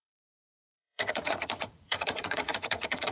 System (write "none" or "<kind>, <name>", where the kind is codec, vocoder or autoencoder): vocoder, Vocos